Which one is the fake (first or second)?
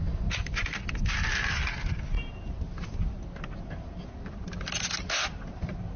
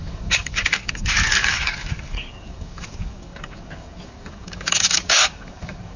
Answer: second